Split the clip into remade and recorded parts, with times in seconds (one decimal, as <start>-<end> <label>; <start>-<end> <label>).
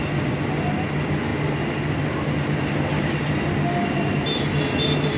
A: 0.0-5.2 recorded